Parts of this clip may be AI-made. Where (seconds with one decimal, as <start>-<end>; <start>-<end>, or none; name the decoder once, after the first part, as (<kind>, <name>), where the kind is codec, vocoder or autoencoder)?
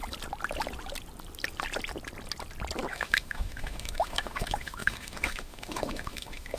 2.9-6.6 (autoencoder, DAC-VAE)